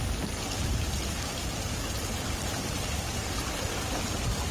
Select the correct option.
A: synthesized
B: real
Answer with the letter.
B